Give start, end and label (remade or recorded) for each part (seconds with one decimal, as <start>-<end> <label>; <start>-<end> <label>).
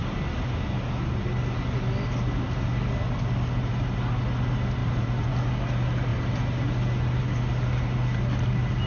0.0-4.8 recorded; 4.8-5.3 remade; 5.3-8.9 recorded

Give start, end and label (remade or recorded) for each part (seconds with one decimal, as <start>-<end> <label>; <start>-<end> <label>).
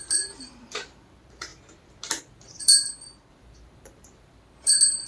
0.0-1.5 remade; 1.5-2.2 recorded; 2.2-2.8 remade; 2.8-3.3 recorded; 3.3-5.1 remade